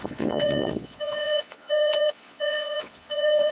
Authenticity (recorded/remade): remade